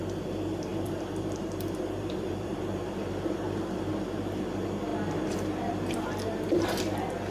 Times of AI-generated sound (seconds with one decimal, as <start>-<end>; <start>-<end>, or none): 0.7-3.9